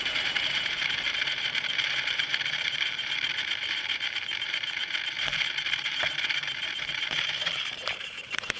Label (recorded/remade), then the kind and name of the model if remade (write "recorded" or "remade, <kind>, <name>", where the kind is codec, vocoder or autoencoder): remade, vocoder, BigVGAN v2